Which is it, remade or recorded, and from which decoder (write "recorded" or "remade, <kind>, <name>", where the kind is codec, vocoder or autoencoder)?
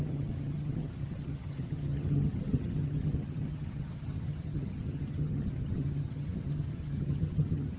remade, vocoder, HiFi-GAN